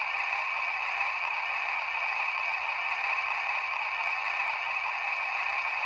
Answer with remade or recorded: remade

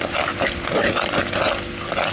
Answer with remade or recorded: recorded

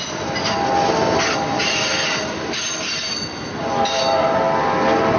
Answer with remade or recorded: recorded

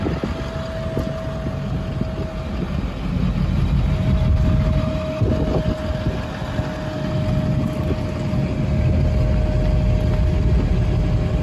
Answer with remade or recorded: recorded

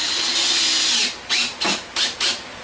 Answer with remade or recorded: recorded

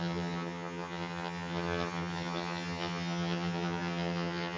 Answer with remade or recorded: remade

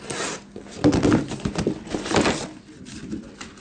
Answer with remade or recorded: recorded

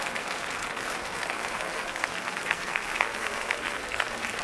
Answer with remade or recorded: remade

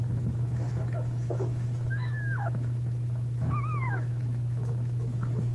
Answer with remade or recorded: remade